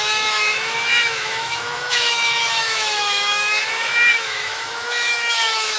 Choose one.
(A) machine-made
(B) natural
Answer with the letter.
A